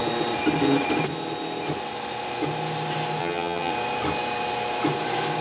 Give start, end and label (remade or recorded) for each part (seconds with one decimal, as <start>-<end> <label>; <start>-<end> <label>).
0.0-3.2 recorded; 3.2-3.7 remade; 3.7-5.4 recorded